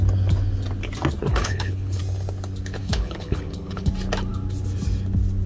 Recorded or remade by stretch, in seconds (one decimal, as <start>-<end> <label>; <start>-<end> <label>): 0.0-1.3 recorded; 1.3-2.0 remade; 2.0-2.8 recorded; 2.8-3.9 remade; 3.9-5.5 recorded